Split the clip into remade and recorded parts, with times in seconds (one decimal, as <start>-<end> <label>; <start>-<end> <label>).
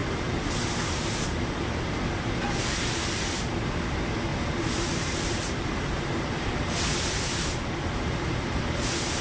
0.0-1.6 remade; 1.6-4.3 recorded; 4.3-8.6 remade; 8.6-9.2 recorded